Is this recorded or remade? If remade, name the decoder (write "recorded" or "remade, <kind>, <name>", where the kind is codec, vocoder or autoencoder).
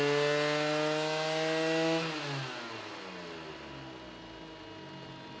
recorded